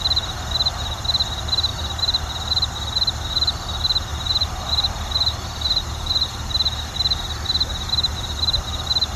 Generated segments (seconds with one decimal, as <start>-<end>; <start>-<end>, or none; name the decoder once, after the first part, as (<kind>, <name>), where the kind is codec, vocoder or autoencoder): none